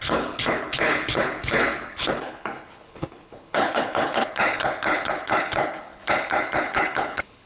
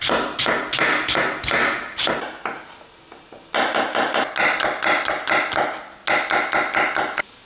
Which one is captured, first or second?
second